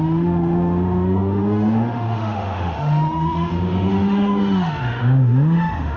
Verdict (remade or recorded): remade